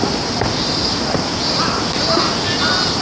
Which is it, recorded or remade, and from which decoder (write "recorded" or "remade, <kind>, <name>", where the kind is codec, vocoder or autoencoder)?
recorded